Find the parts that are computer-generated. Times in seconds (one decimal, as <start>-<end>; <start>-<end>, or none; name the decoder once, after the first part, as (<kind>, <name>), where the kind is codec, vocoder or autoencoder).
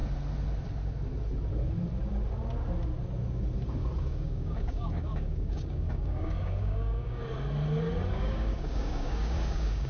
4.0-7.2 (codec, DAC); 8.1-9.9